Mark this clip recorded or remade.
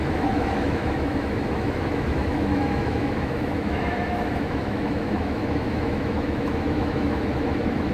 remade